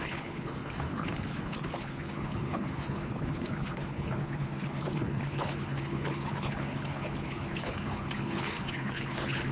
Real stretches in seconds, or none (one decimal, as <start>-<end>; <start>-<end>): none